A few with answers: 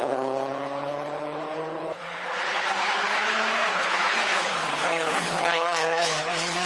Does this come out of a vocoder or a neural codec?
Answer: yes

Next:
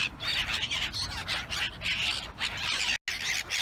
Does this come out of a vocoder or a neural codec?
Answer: no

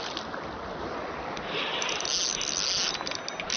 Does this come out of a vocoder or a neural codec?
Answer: no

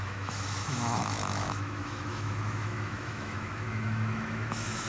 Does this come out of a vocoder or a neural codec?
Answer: yes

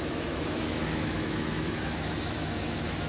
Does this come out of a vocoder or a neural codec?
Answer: yes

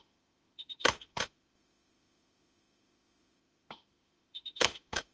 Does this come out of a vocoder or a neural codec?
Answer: yes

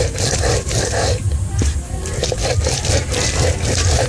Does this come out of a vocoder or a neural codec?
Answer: no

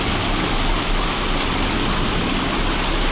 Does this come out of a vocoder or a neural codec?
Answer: no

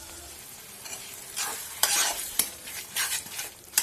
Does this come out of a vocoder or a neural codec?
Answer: yes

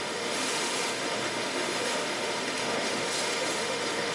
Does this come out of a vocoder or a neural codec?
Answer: yes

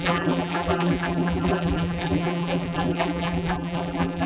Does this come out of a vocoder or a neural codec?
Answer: yes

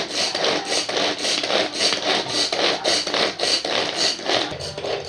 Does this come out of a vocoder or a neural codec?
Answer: no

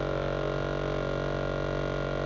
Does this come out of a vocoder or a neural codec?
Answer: no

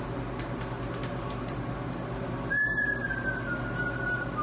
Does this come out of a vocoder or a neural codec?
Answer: no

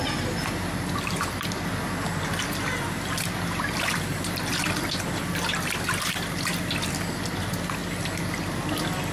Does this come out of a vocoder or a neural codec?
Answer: no